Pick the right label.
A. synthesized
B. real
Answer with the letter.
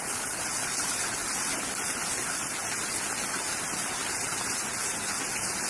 B